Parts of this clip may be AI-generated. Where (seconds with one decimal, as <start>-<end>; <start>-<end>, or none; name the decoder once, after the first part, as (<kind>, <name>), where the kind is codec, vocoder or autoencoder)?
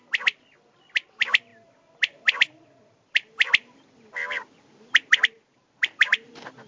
1.5-4.3 (vocoder, BigVGAN v2)